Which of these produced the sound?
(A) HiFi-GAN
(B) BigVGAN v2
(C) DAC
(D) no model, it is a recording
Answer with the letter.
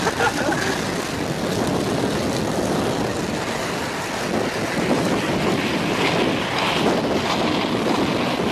D